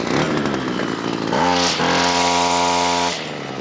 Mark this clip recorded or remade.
recorded